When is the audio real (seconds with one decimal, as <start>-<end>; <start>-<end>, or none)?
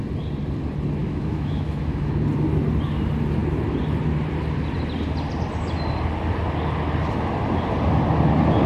0.0-1.0; 2.1-8.7